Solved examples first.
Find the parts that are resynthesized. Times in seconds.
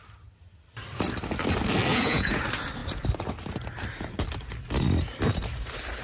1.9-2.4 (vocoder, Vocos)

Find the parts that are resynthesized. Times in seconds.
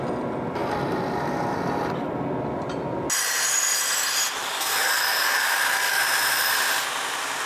4.4-6.0 (codec, DAC)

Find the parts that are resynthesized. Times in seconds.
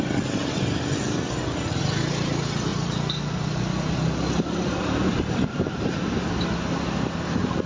none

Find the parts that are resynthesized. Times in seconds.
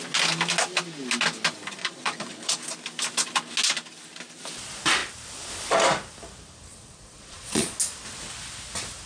1.8-2.6 (vocoder, Vocos); 6.7-7.8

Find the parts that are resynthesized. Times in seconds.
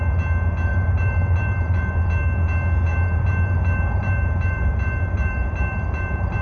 0.7-1.9 (vocoder, BigVGAN v2); 2.9-6.4